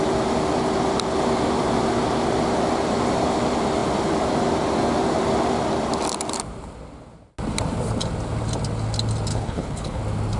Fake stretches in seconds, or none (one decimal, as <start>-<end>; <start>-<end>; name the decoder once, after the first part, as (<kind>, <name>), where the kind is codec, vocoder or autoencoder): 9.3-10.0 (codec, HILCodec)